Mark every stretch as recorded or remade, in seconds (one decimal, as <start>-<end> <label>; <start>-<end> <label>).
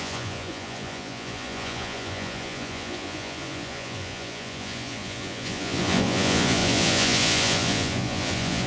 0.0-8.7 remade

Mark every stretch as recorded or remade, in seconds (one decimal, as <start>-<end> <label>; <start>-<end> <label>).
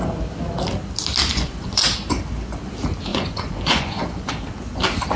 0.0-1.3 recorded; 1.3-1.8 remade; 1.8-3.1 recorded; 3.1-4.3 remade; 4.3-5.2 recorded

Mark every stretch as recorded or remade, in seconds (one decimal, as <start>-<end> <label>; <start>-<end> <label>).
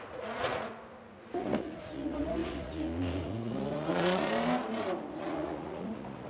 0.0-0.7 remade; 0.7-1.3 recorded; 1.3-4.3 remade; 4.3-5.2 recorded; 5.2-6.3 remade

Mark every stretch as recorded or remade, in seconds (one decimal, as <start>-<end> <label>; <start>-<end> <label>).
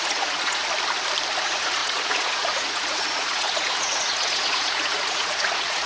0.0-0.6 remade; 0.6-1.4 recorded; 1.4-5.9 remade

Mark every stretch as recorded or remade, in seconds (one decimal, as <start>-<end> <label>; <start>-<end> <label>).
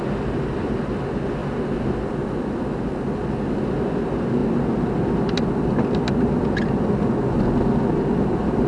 0.0-8.7 recorded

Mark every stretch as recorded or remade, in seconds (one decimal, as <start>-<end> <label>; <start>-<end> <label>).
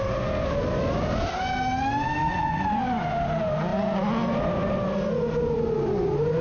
0.0-2.2 recorded; 2.2-2.8 remade; 2.8-6.4 recorded